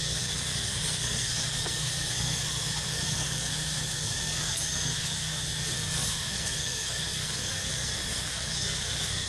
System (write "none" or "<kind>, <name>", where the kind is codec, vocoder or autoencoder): codec, SNAC